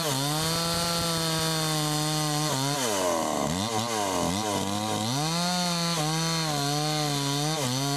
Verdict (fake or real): real